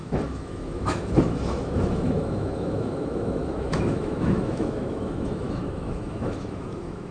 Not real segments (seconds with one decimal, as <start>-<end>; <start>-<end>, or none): 0.0-7.1